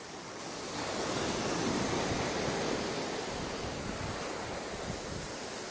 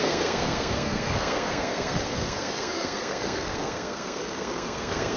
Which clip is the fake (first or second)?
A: second